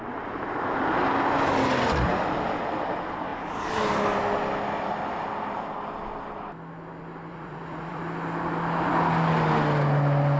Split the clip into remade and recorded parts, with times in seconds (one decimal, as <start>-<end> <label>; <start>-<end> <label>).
0.0-7.3 recorded; 7.3-8.0 remade; 8.0-10.4 recorded